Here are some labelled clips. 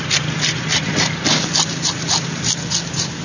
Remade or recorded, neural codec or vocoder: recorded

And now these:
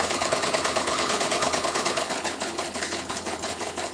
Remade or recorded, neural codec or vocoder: remade, codec, HILCodec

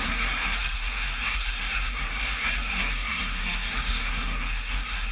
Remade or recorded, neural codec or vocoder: remade, codec, SNAC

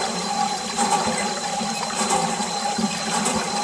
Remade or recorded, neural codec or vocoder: remade, vocoder, BigVGAN v2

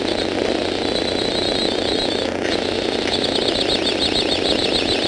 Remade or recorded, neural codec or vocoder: recorded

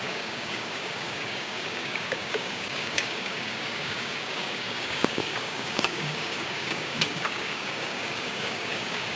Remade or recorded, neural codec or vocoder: remade, codec, DAC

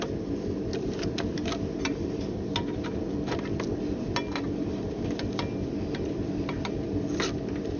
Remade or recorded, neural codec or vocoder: recorded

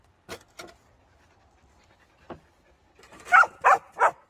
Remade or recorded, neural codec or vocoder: recorded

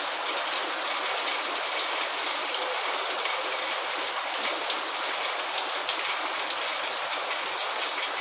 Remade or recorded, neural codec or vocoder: recorded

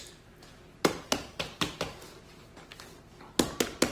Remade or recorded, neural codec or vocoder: recorded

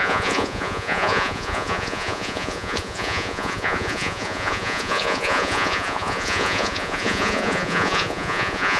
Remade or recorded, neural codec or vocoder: remade, vocoder, Vocos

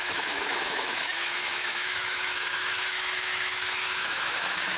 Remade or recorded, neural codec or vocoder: remade, autoencoder, DAC-VAE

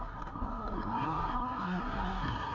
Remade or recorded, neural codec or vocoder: remade, codec, SNAC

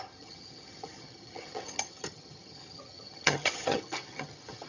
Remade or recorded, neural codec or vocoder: remade, vocoder, HiFi-GAN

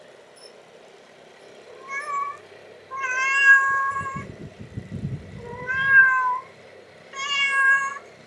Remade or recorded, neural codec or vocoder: recorded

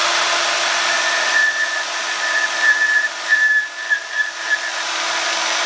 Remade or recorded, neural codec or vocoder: recorded